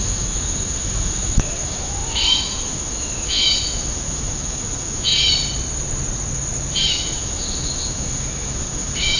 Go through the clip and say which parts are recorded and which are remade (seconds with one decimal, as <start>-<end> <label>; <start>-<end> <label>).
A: 0.0-5.1 remade; 5.1-6.9 recorded; 6.9-9.2 remade